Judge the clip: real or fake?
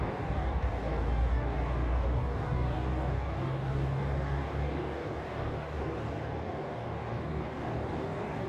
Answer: fake